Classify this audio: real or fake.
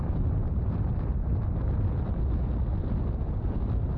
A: real